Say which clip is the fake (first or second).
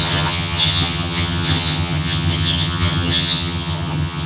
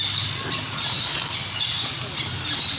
first